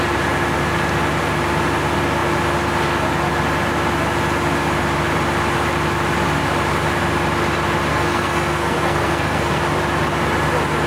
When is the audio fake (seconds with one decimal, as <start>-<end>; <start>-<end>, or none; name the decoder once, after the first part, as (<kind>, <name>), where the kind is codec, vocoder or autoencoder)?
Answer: 7.9-9.6 (codec, SNAC)